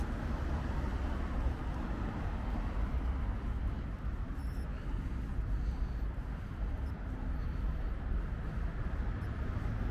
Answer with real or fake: real